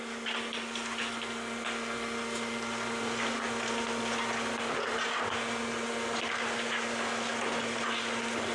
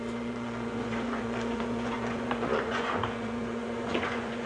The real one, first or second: first